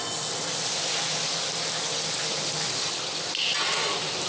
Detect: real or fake real